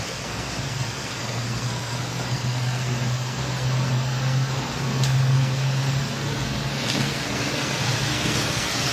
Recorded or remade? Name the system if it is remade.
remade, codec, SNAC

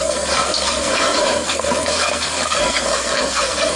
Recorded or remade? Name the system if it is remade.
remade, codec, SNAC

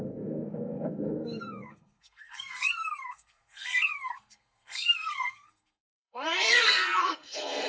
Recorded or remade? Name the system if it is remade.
remade, codec, SNAC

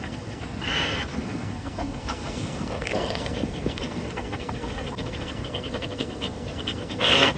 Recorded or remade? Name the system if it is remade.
remade, codec, SNAC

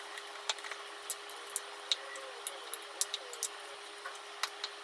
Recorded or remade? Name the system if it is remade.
recorded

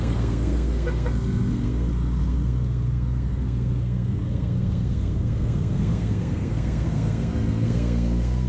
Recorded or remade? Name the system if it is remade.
remade, codec, SNAC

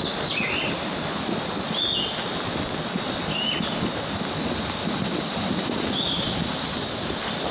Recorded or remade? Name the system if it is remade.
recorded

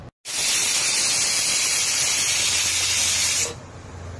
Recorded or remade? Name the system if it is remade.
recorded